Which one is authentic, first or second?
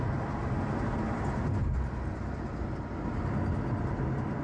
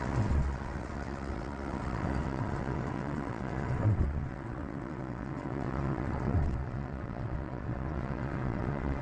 first